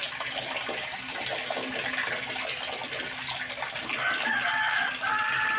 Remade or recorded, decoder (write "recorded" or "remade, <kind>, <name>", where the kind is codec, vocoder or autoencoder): recorded